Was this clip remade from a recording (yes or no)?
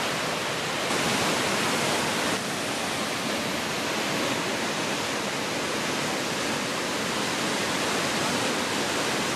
no